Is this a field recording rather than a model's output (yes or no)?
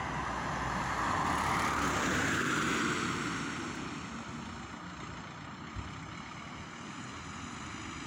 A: yes